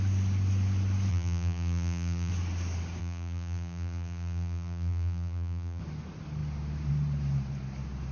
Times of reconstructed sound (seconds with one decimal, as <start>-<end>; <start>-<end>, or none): 1.1-2.3; 3.0-5.8